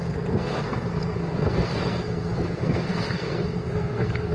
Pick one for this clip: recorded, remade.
remade